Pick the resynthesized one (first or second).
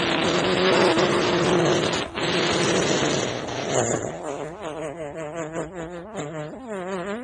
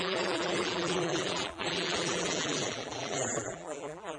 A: second